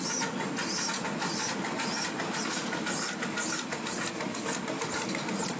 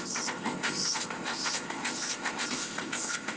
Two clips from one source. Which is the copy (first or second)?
second